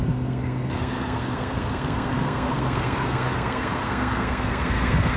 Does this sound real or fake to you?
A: fake